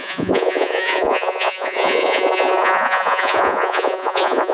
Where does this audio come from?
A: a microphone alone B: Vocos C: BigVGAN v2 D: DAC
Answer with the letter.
B